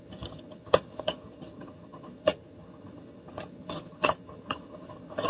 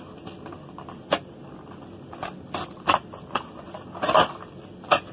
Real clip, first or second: second